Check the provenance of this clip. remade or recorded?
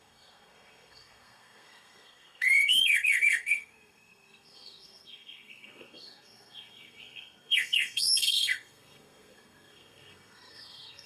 remade